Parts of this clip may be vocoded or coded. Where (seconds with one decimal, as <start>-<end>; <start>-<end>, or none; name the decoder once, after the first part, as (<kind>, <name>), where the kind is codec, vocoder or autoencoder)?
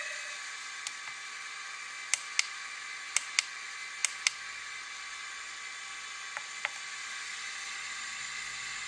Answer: none